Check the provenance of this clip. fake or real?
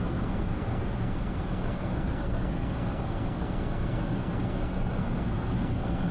fake